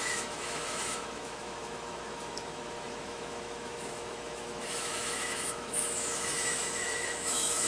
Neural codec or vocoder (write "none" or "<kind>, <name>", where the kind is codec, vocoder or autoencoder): autoencoder, DAC-VAE